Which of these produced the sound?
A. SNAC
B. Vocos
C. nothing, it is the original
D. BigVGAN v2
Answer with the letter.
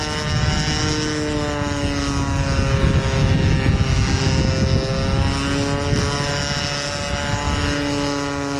C